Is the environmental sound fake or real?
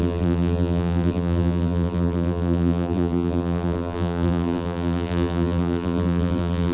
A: fake